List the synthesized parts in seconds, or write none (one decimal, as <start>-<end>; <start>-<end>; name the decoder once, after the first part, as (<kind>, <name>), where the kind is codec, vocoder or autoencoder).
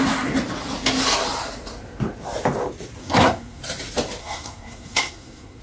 3.0-3.6 (codec, SNAC); 4.2-5.6